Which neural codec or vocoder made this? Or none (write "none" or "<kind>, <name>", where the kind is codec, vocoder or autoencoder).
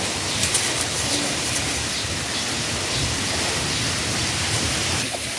vocoder, BigVGAN v2